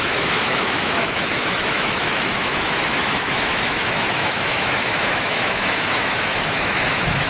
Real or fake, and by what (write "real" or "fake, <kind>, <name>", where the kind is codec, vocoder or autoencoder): fake, autoencoder, DAC-VAE